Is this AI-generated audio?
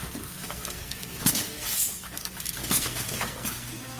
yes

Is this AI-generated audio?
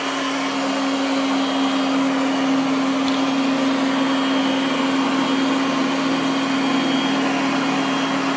no